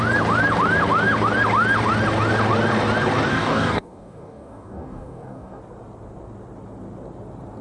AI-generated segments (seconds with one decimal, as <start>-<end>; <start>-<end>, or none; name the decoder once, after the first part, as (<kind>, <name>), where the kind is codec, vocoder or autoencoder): 3.3-5.6 (codec, DAC)